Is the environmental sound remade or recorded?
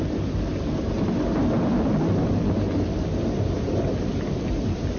recorded